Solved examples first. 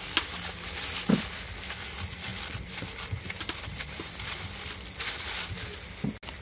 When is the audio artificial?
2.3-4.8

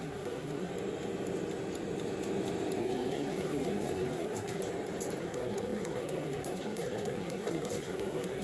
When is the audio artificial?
0.0-0.7; 2.8-4.6; 5.2-8.4

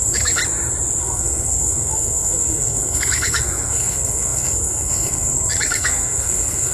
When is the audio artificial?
0.0-0.4; 1.0-6.7

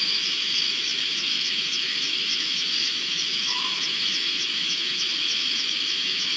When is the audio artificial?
0.0-6.4

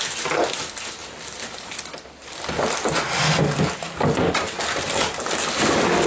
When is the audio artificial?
none

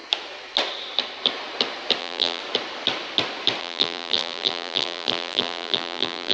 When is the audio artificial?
2.0-2.4; 3.6-6.3

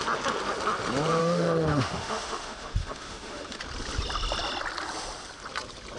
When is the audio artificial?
1.2-3.6

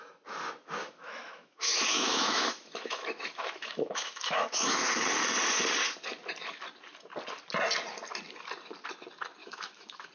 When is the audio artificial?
0.8-5.0; 9.4-10.1